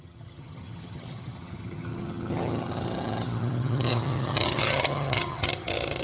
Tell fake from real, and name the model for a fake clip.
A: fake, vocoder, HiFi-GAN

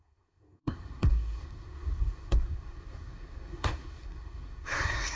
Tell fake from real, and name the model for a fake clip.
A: fake, codec, SNAC